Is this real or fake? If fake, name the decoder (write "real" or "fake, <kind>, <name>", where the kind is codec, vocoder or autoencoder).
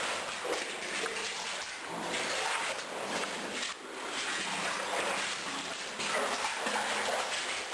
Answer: real